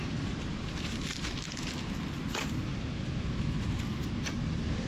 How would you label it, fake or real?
real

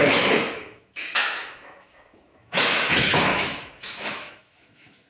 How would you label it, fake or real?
fake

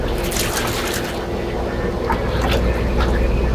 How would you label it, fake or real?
real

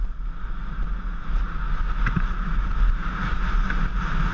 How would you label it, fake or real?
real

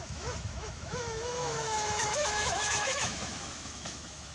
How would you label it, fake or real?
fake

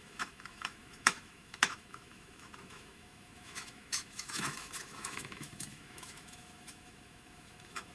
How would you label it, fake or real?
fake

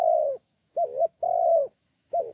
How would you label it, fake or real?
fake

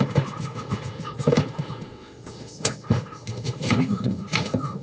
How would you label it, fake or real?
fake